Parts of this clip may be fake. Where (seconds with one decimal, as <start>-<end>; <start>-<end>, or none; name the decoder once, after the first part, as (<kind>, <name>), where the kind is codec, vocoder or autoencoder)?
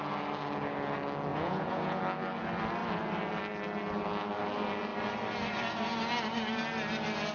1.3-2.0 (vocoder, Vocos)